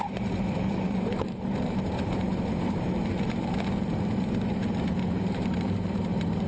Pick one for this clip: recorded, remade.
remade